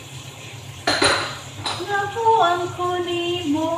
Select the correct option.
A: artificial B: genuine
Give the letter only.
A